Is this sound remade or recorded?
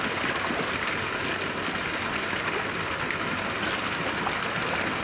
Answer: recorded